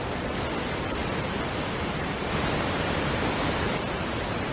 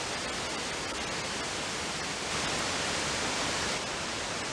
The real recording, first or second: second